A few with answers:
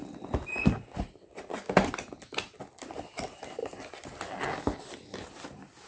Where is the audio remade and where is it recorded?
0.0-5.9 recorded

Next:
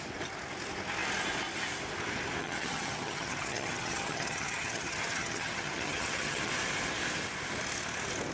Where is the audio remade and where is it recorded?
0.0-2.4 recorded; 2.4-6.5 remade; 6.5-8.3 recorded

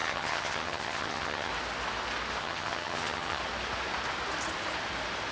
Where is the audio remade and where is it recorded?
0.0-1.5 remade; 1.5-2.4 recorded; 2.4-3.4 remade; 3.4-5.3 recorded

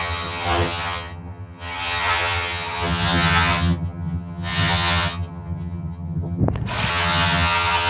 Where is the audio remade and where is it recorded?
0.0-6.4 remade; 6.4-6.9 recorded; 6.9-7.9 remade

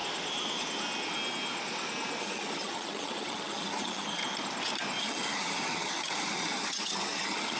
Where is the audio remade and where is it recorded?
0.0-2.2 recorded; 2.2-4.2 remade; 4.2-5.0 recorded; 5.0-7.6 remade